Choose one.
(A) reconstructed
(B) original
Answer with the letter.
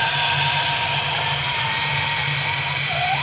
B